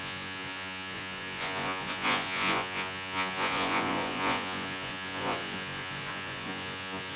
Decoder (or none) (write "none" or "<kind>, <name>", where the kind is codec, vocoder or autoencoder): vocoder, Vocos